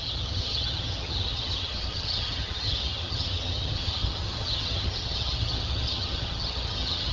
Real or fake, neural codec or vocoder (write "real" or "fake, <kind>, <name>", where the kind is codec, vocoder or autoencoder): fake, vocoder, HiFi-GAN